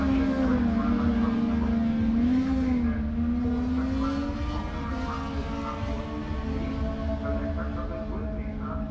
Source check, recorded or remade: recorded